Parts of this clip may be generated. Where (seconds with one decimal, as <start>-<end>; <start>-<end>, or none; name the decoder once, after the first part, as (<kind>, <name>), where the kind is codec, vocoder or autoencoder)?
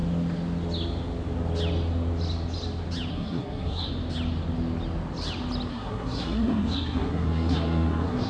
3.1-3.9 (codec, SNAC); 5.7-8.3